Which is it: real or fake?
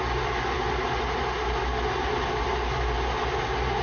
real